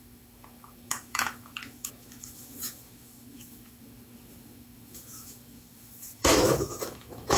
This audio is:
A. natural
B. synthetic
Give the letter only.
B